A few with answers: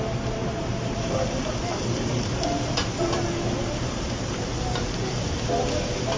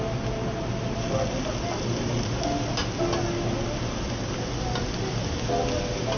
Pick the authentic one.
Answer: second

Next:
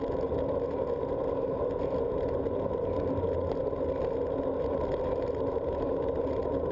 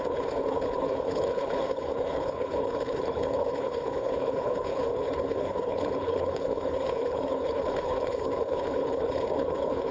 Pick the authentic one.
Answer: first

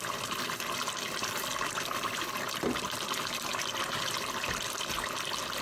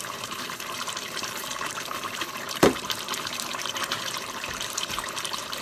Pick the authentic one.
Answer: first